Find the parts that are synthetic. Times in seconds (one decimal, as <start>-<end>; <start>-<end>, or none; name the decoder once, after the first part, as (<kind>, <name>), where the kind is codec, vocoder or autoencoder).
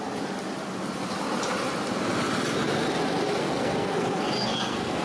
3.4-5.0 (codec, SNAC)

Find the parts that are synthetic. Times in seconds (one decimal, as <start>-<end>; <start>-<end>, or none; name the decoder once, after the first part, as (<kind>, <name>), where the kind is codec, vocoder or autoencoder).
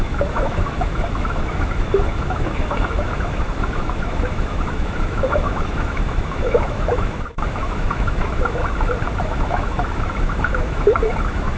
0.0-8.6 (autoencoder, DAC-VAE); 9.2-11.6